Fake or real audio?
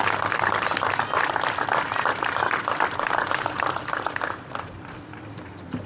real